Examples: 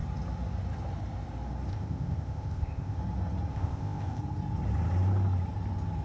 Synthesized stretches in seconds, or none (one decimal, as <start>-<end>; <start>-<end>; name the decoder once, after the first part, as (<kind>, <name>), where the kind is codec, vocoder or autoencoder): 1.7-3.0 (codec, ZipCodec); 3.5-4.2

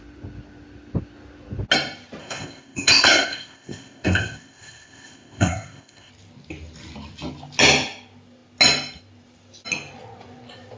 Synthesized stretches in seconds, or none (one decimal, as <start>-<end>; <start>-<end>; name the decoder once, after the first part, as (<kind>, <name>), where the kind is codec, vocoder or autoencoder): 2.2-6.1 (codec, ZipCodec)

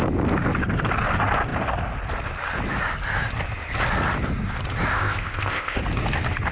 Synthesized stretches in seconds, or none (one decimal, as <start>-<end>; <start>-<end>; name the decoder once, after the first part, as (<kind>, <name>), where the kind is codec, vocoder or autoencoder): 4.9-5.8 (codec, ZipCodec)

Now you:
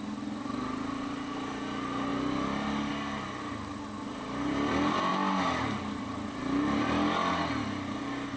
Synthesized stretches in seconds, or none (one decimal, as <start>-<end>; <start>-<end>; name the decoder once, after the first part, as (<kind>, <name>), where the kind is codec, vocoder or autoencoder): none

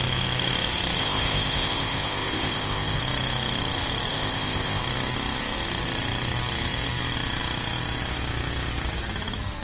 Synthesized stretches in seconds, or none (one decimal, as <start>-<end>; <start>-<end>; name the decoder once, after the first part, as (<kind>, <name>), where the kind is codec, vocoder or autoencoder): 1.0-3.0 (codec, ZipCodec); 4.1-4.8

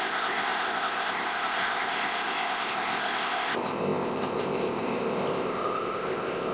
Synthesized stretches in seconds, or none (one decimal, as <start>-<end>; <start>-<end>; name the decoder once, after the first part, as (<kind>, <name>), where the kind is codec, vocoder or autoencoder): 0.0-6.5 (codec, ZipCodec)

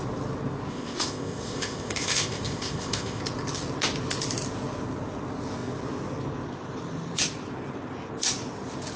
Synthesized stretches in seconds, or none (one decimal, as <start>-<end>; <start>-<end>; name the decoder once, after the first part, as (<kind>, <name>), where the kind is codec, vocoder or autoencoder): 0.7-3.2 (codec, ZipCodec)

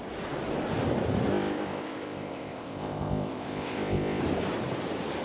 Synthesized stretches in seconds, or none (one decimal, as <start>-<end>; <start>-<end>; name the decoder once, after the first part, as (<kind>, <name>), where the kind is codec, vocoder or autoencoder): 1.3-4.2 (codec, ZipCodec)